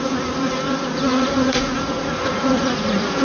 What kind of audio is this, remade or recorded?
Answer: remade